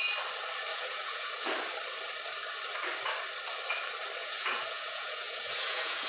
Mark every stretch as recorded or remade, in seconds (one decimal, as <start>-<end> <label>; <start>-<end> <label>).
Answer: 0.0-0.7 recorded; 0.7-1.5 remade; 1.5-4.2 recorded; 4.2-6.1 remade